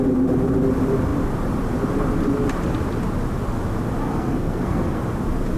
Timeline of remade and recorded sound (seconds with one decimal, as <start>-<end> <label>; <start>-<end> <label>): 0.0-4.0 recorded; 4.0-5.0 remade; 5.0-5.6 recorded